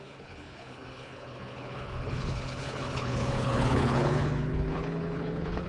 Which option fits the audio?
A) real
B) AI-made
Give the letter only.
B